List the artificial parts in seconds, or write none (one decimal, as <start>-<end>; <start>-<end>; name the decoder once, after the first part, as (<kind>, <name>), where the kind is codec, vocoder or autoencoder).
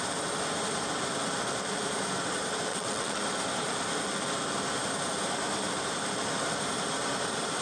2.7-3.2 (vocoder, WaveNeXt)